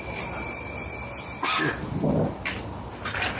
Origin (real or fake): real